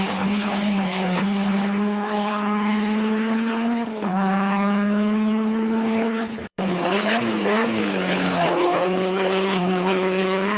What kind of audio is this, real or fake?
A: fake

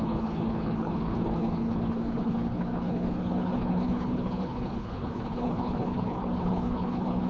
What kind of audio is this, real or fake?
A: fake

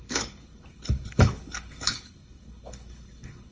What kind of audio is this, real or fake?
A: fake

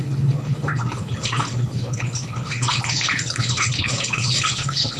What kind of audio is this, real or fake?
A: fake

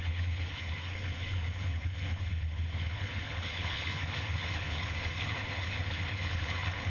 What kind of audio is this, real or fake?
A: fake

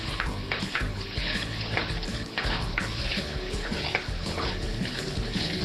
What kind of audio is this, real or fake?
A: fake